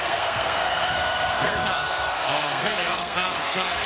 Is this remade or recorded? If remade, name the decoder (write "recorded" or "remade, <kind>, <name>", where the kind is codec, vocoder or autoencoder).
remade, codec, SNAC